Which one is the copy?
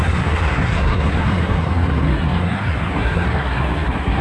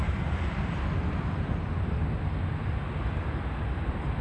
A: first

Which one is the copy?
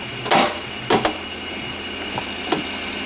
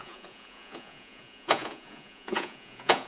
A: second